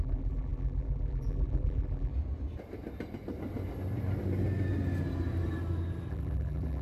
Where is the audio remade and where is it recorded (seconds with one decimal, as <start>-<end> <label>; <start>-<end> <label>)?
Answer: 0.0-2.1 remade; 2.1-6.1 recorded; 6.1-6.8 remade